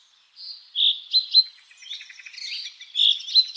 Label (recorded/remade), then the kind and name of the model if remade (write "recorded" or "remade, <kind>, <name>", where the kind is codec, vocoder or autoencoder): recorded